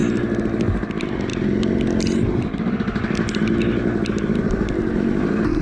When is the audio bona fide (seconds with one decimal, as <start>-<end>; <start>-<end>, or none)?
0.0-5.6